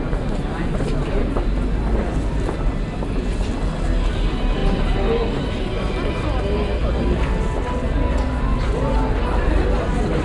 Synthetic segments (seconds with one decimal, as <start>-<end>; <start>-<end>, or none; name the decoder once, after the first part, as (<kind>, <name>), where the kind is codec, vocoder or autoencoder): none